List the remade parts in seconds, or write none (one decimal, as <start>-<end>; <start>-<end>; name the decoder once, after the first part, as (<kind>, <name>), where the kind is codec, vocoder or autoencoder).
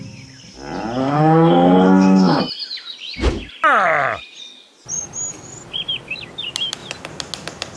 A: 1.0-2.4 (codec, SNAC)